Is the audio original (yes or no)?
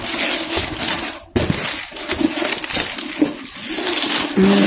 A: yes